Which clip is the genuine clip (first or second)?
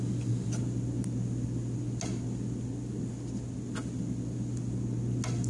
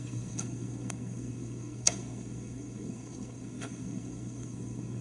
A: first